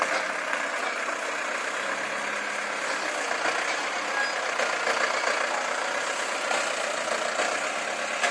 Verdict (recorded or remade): recorded